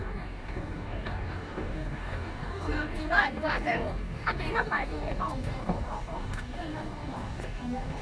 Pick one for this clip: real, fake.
fake